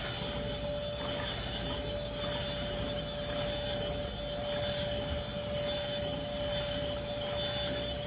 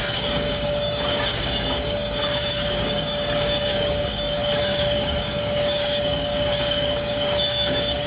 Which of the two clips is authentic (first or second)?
first